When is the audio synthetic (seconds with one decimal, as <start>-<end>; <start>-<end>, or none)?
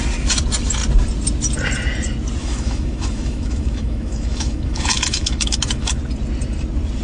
2.4-6.0